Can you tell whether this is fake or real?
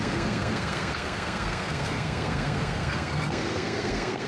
fake